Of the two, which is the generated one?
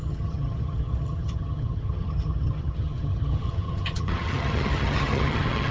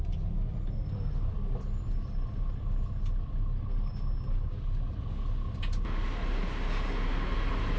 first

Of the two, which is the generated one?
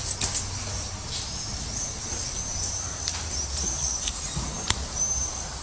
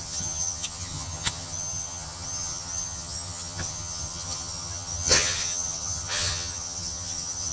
second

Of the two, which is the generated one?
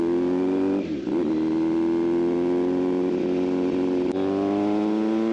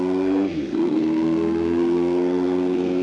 second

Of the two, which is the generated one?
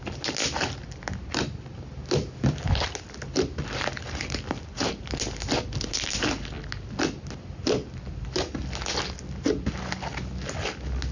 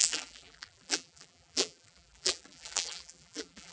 second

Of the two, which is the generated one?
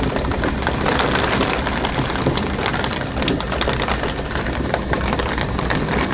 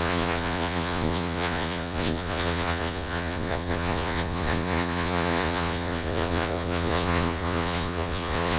second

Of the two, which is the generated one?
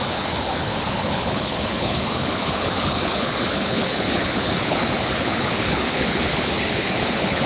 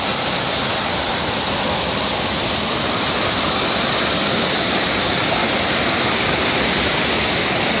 first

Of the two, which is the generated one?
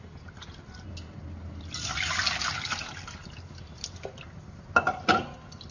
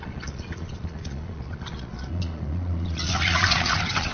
second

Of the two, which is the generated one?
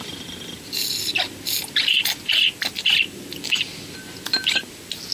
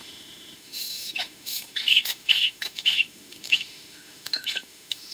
second